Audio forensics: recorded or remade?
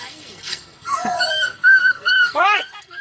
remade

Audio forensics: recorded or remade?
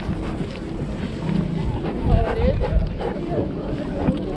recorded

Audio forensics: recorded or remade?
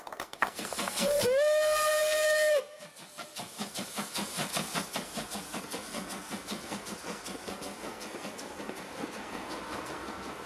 remade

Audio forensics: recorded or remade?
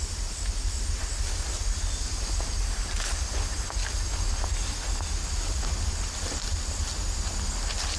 recorded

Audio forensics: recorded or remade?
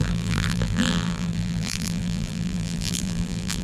remade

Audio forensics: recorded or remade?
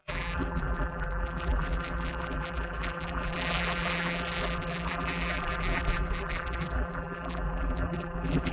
remade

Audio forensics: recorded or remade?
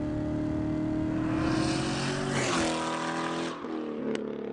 recorded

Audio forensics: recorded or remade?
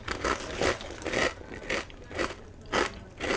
recorded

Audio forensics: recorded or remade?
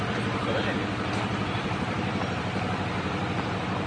remade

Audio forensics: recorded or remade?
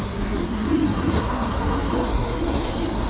remade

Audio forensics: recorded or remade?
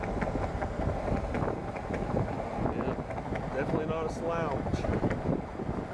recorded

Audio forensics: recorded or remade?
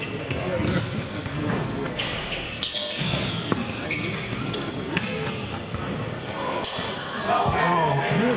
remade